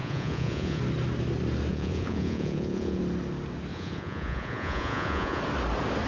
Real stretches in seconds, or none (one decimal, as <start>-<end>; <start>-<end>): 0.8-1.7; 3.0-3.7; 5.4-6.1